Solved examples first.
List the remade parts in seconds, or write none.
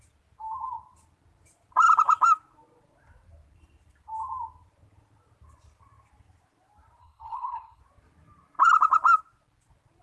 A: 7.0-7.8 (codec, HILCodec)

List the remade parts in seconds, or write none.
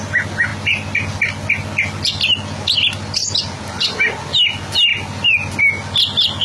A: none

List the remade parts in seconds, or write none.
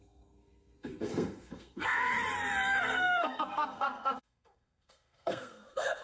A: 0.0-2.1 (codec, SNAC); 2.8-6.0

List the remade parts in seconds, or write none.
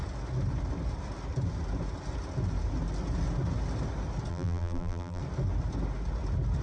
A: 4.3-5.2 (vocoder, BigVGAN v2)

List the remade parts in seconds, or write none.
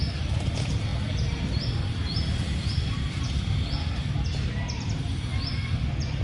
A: none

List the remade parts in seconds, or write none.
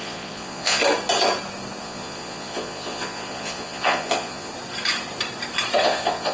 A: 0.0-0.8 (vocoder, Vocos); 1.8-4.5; 5.8-6.3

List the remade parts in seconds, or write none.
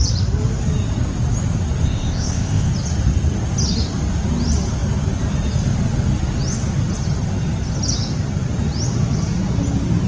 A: 1.8-2.7 (codec, ZipCodec)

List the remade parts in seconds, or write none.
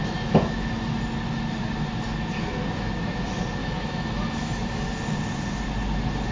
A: 3.6-4.5 (autoencoder, DAC-VAE)